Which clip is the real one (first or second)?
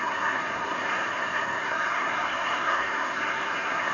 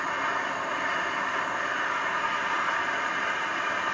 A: second